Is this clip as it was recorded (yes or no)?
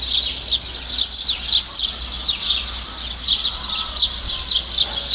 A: yes